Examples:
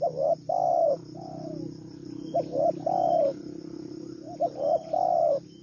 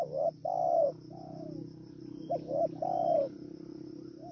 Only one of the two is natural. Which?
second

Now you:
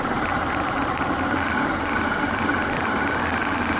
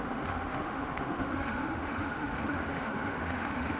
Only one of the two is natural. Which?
first